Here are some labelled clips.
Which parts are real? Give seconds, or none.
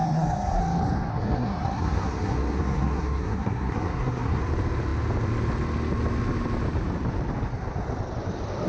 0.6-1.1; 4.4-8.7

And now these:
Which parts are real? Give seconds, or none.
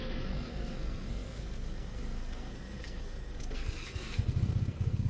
none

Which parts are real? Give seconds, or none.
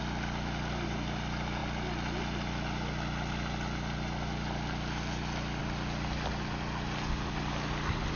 0.0-8.2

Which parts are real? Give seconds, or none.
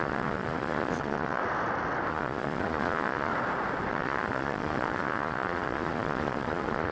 1.4-2.1; 3.3-3.9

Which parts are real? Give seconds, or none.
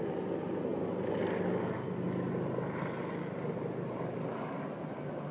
0.0-5.3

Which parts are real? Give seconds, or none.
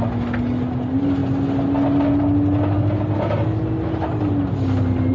0.0-5.1